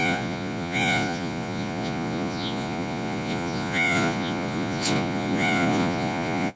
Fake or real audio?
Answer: fake